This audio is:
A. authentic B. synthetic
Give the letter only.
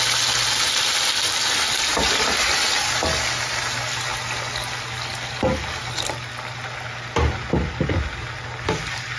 A